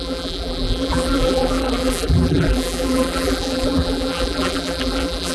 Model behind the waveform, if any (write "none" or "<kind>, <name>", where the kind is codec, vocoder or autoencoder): vocoder, BigVGAN v2